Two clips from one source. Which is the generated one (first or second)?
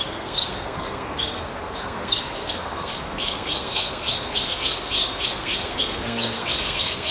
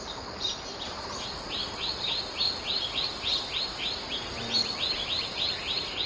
first